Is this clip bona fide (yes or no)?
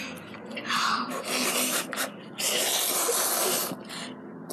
yes